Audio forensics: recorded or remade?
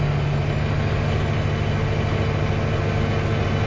recorded